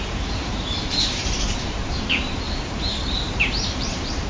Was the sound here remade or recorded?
remade